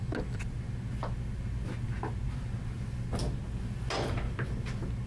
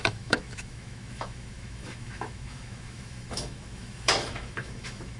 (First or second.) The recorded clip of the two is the first